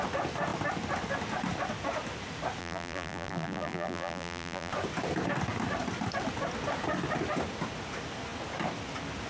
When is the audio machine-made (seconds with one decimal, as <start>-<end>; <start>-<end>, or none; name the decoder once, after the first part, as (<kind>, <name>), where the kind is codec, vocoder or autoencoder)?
2.6-4.7 (vocoder, BigVGAN v2)